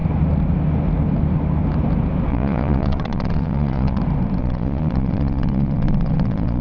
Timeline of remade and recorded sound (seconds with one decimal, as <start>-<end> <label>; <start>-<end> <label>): 0.0-2.3 recorded; 2.3-4.0 remade; 4.0-4.4 recorded; 4.4-6.6 remade